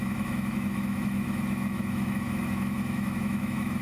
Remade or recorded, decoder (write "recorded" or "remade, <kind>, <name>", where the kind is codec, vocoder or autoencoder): remade, autoencoder, DAC-VAE